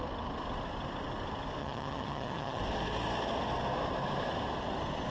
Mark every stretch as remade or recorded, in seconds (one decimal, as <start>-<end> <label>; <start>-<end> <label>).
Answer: 0.0-1.6 recorded; 1.6-2.6 remade; 2.6-5.1 recorded